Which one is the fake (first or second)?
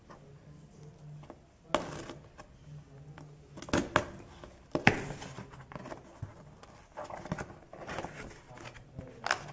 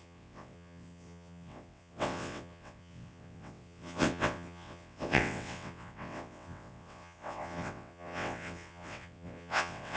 second